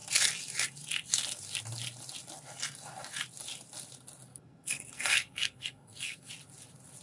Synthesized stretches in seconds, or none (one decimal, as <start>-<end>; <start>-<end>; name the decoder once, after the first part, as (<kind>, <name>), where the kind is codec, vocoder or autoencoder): 4.3-6.3 (codec, SNAC)